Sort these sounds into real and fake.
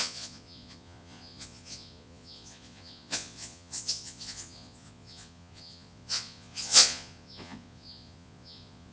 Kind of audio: fake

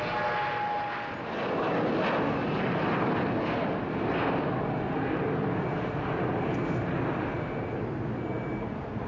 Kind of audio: real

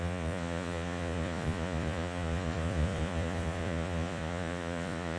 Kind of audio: fake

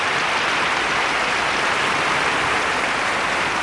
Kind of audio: real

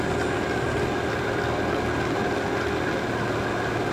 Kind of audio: real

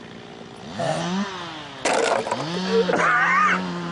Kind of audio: real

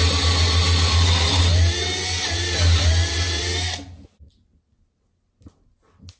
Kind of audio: real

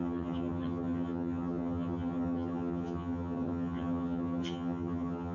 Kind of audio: fake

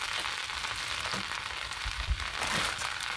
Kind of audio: real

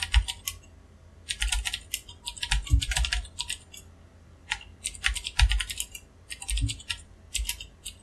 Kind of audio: real